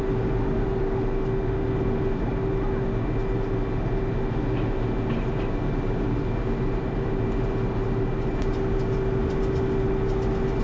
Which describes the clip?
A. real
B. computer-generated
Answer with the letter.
A